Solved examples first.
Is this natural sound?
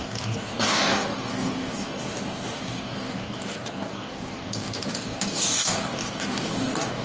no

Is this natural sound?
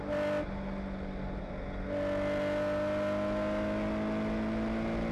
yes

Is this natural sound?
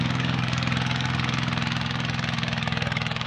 no